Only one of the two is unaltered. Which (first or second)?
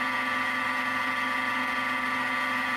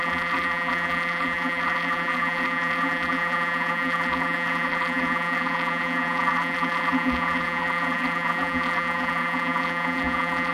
first